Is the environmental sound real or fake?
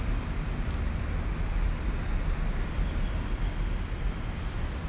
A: real